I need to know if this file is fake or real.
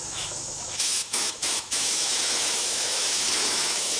fake